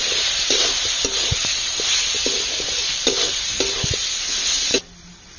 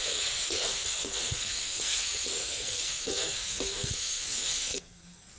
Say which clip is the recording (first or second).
first